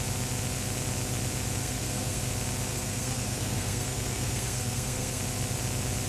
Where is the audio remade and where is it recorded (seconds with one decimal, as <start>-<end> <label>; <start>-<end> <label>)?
0.0-1.6 recorded; 1.6-2.2 remade; 2.2-2.7 recorded; 2.7-5.2 remade; 5.2-6.1 recorded

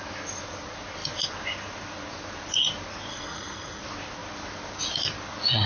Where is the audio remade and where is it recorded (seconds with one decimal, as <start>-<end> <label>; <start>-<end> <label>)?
0.0-3.1 recorded; 3.1-3.8 remade; 3.8-5.7 recorded

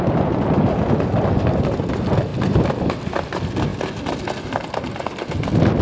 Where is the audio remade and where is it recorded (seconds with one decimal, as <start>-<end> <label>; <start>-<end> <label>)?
0.0-5.8 recorded

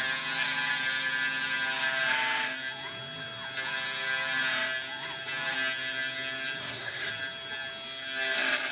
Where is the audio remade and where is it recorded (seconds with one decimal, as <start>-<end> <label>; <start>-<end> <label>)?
0.0-6.6 recorded; 6.6-7.1 remade; 7.1-8.7 recorded

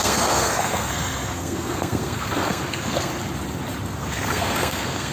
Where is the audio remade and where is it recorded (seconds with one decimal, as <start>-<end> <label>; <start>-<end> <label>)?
0.0-3.1 remade; 3.1-4.0 recorded; 4.0-5.1 remade

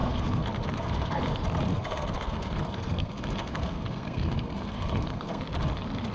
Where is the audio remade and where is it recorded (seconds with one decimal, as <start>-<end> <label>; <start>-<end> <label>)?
0.0-1.2 remade; 1.2-1.7 recorded; 1.7-5.4 remade; 5.4-6.1 recorded

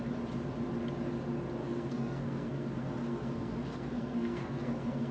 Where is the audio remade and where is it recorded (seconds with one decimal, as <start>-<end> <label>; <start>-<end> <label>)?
0.0-1.6 recorded; 1.6-5.1 remade

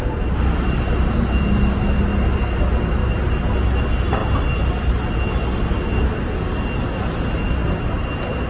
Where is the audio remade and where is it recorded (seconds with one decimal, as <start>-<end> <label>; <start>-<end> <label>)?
0.0-8.5 recorded